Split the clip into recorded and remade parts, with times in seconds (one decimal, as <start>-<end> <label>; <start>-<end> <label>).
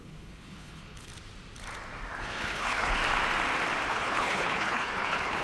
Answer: 0.0-1.1 remade; 1.1-2.2 recorded; 2.2-3.0 remade; 3.0-3.9 recorded; 3.9-5.4 remade